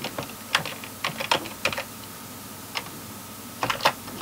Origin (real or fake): real